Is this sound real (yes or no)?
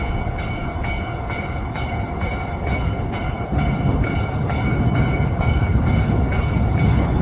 no